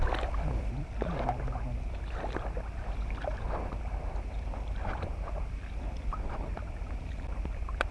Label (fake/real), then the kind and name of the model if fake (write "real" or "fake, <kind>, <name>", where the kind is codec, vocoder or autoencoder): fake, vocoder, BigVGAN v2